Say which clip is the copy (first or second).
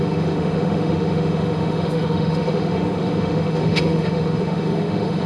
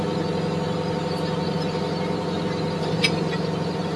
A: first